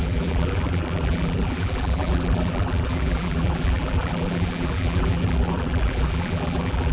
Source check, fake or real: fake